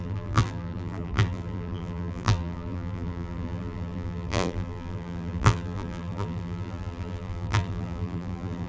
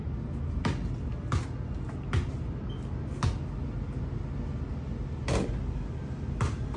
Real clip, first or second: second